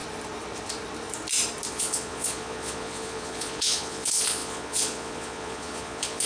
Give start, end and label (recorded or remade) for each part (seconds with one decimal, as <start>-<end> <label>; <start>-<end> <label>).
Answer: 0.0-1.7 recorded; 1.7-6.3 remade